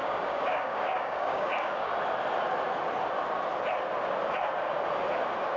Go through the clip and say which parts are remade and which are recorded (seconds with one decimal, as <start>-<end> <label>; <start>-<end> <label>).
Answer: 0.0-1.9 remade; 1.9-5.6 recorded